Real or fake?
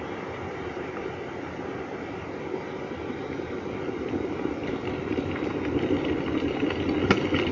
real